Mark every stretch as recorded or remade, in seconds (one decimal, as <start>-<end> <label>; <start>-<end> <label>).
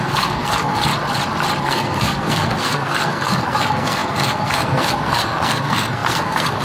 0.0-0.9 remade; 0.9-1.6 recorded; 1.6-6.6 remade